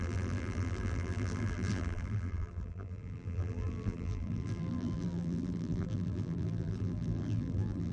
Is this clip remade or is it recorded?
remade